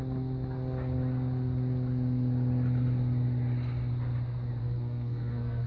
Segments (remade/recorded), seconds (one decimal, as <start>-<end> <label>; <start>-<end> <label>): 0.0-4.6 recorded; 4.6-5.7 remade